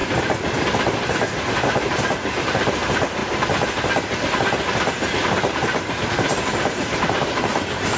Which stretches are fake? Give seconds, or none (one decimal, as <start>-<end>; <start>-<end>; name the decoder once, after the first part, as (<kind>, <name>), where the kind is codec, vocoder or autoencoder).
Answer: 1.5-3.2 (vocoder, BigVGAN v2); 5.5-8.0